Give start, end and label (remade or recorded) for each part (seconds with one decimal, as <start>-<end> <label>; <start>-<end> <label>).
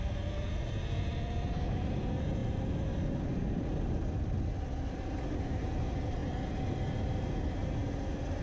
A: 0.0-8.4 recorded